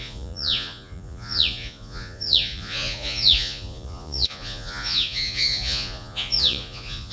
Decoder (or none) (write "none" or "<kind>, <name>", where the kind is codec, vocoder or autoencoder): vocoder, Vocos